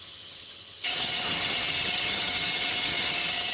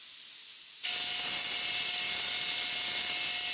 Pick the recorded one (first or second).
second